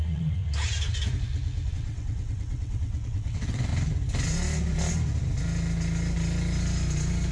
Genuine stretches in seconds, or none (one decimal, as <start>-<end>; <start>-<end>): 0.4-1.7; 3.7-7.3